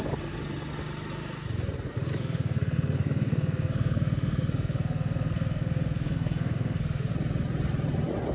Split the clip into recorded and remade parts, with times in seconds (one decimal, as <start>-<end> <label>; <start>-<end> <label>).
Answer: 0.0-2.1 recorded; 2.1-7.1 remade; 7.1-8.3 recorded